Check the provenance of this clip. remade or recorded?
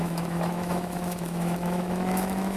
remade